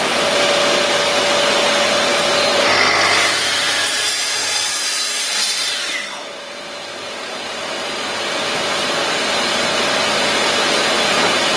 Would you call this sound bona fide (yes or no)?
yes